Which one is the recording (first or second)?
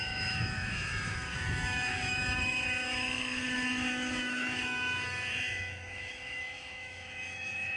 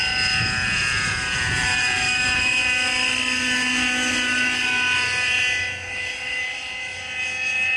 second